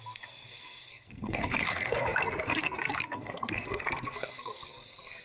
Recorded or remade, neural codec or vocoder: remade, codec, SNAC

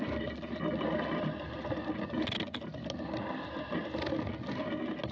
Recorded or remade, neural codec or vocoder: recorded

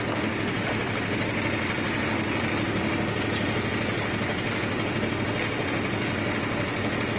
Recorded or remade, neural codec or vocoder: recorded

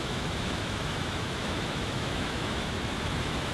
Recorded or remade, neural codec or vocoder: remade, autoencoder, DAC-VAE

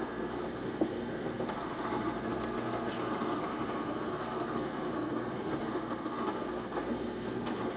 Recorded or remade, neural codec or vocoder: remade, codec, SNAC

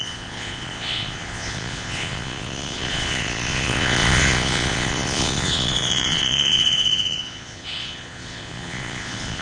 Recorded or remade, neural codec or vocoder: remade, vocoder, Vocos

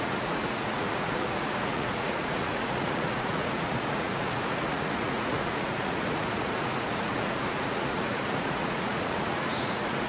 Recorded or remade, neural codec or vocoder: remade, vocoder, Vocos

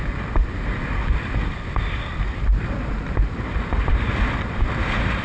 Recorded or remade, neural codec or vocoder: recorded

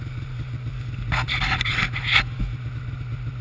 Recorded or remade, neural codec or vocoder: recorded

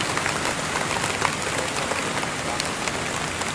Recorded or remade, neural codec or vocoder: recorded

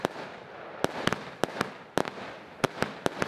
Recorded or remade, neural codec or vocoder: recorded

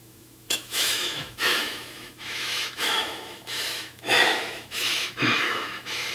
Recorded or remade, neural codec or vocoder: remade, autoencoder, DAC-VAE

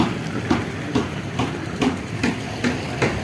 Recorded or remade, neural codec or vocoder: recorded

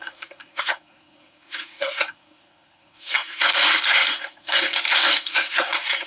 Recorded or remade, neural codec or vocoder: remade, codec, SNAC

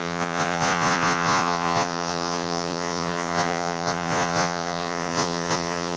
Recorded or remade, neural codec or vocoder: remade, vocoder, Vocos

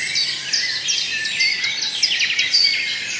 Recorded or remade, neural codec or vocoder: recorded